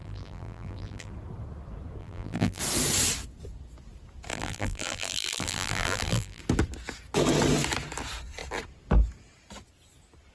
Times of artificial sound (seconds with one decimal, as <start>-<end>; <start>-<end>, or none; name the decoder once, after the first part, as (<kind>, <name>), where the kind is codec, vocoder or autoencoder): 0.0-1.1 (vocoder, BigVGAN v2); 2.0-2.6; 4.3-6.4